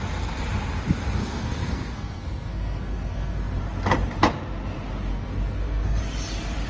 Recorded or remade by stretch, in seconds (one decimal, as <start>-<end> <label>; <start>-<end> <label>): 0.0-1.2 recorded; 1.2-3.6 remade; 3.6-5.1 recorded; 5.1-6.0 remade; 6.0-6.7 recorded

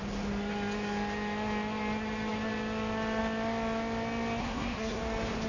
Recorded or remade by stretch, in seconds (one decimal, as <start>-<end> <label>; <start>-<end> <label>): 0.0-4.4 recorded; 4.4-5.0 remade; 5.0-5.5 recorded

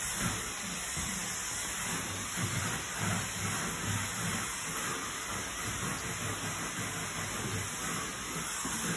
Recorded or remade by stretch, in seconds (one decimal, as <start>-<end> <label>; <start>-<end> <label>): 0.0-9.0 recorded